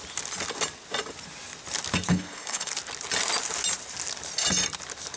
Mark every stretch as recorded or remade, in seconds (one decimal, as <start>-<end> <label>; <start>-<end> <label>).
0.0-2.1 recorded; 2.1-2.7 remade; 2.7-5.2 recorded